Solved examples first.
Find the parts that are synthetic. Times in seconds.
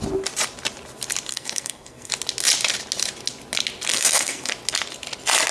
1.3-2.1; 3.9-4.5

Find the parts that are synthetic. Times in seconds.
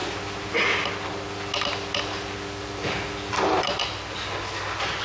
none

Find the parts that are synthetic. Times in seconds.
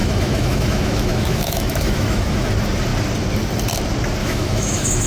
0.0-2.5; 4.2-5.1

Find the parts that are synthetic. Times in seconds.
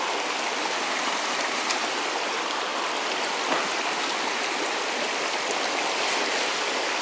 none